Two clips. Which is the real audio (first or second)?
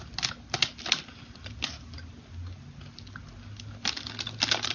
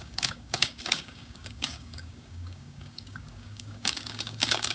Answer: first